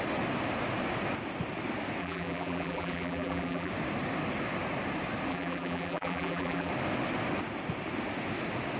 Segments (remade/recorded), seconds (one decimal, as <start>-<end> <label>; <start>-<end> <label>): 0.0-2.0 recorded; 2.0-3.7 remade; 3.7-5.3 recorded; 5.3-6.7 remade; 6.7-8.8 recorded